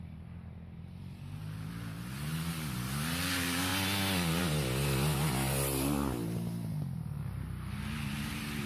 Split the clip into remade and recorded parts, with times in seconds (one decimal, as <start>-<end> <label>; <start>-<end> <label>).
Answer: 0.0-8.7 recorded